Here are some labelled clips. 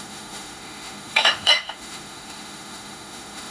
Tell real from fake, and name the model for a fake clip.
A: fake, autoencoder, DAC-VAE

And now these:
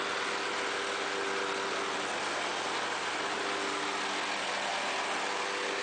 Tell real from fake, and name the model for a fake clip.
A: real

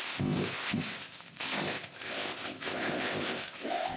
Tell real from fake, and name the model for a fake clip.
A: fake, codec, ZipCodec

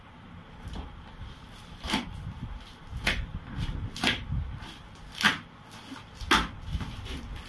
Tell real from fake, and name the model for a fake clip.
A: real